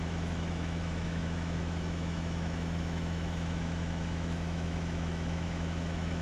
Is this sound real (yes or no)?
no